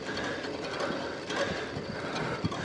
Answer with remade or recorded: recorded